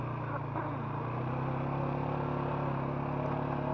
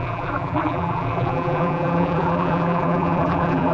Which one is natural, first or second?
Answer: first